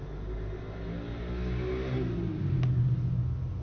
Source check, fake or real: real